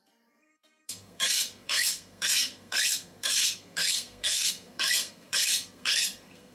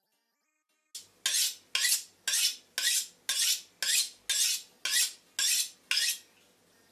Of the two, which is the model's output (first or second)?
first